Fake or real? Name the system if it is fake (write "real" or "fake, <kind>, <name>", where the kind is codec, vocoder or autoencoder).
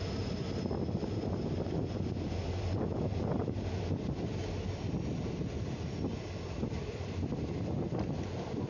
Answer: real